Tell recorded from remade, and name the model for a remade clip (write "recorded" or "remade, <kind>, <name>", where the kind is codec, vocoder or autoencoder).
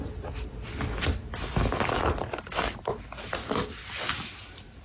recorded